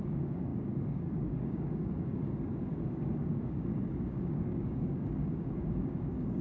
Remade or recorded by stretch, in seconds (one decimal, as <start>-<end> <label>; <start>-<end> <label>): 0.0-6.4 remade